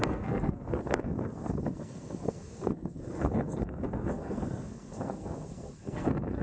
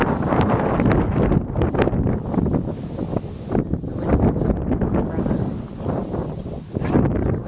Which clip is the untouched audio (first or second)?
second